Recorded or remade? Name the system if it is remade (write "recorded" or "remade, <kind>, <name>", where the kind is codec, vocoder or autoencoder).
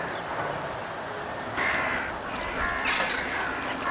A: recorded